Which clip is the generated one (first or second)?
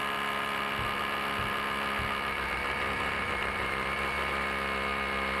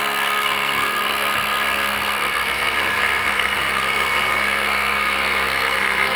second